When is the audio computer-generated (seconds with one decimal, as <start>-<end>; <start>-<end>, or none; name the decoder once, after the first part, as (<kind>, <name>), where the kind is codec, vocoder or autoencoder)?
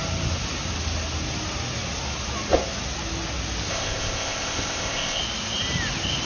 3.7-5.2 (codec, ZipCodec)